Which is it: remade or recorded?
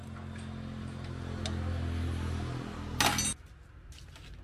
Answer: recorded